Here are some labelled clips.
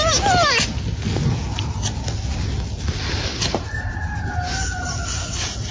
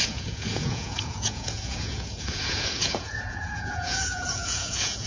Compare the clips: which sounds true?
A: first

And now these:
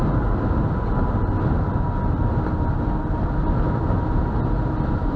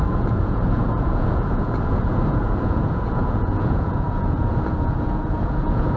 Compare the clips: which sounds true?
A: first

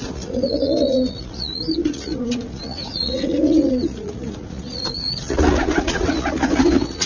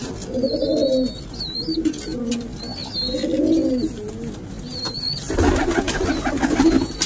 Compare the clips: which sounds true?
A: second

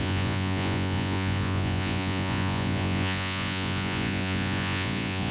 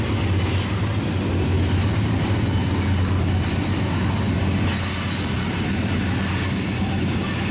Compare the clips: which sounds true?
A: second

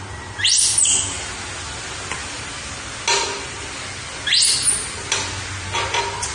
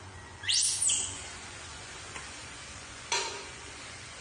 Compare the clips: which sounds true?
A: first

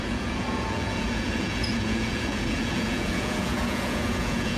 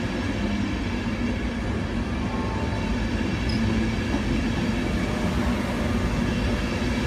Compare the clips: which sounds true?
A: second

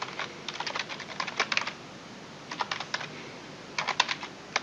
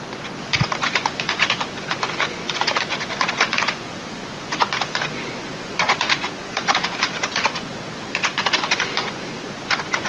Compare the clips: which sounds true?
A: first